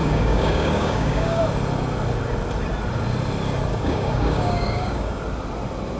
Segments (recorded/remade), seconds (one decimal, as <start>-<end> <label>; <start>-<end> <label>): 0.0-1.4 remade; 1.4-3.7 recorded; 3.7-5.2 remade; 5.2-6.0 recorded